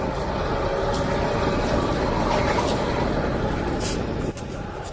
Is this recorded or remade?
recorded